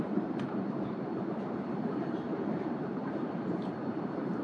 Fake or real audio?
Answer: fake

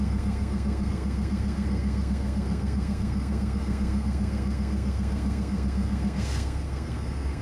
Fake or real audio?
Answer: fake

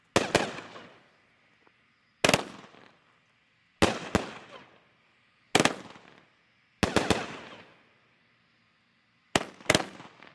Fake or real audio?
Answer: real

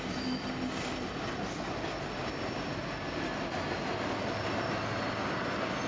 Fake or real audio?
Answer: real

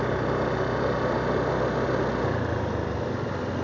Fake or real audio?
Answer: real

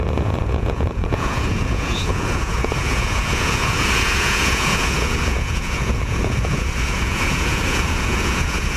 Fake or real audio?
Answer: fake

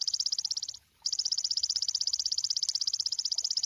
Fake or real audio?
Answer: fake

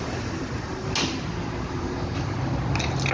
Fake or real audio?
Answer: real